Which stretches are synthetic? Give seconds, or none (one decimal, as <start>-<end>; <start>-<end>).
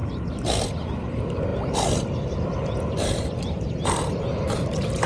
none